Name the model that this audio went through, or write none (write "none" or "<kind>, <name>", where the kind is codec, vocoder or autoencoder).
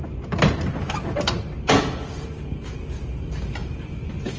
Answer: none